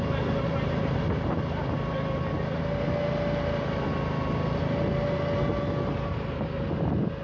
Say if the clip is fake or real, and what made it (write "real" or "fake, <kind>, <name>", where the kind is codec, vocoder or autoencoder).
real